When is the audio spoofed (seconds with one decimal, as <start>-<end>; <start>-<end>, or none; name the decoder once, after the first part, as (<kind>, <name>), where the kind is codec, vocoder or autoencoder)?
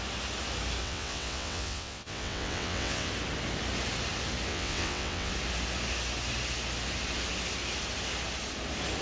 0.8-3.1 (vocoder, WaveNeXt); 4.5-5.3